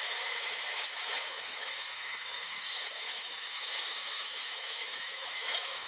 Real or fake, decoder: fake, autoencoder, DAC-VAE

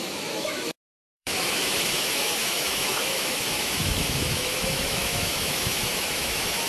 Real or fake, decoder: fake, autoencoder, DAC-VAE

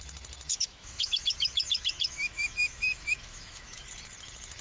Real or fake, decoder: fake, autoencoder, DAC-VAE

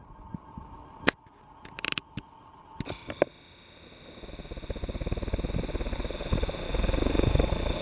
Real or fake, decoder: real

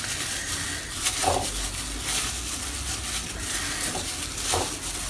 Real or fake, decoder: real